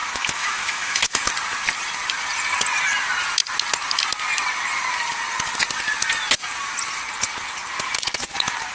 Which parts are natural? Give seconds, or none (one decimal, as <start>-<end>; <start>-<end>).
1.3-8.7